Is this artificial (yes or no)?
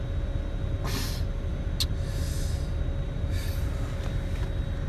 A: no